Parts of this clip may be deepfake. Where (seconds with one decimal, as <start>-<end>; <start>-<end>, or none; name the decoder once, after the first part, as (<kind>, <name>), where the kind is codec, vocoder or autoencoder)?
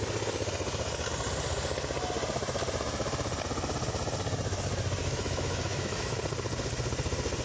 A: 5.0-6.2 (autoencoder, DAC-VAE)